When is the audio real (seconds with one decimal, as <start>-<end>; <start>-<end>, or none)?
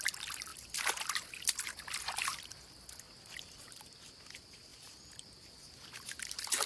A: 0.0-6.7